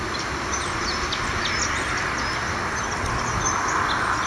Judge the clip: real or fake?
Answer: real